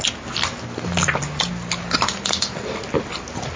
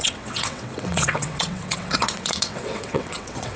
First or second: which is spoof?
second